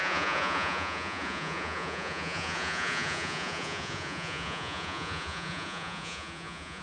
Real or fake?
fake